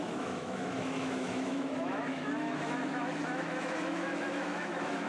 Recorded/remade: remade